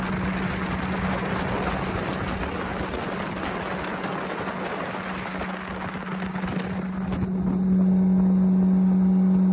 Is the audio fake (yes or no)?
no